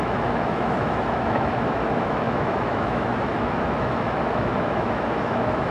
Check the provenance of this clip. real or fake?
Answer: fake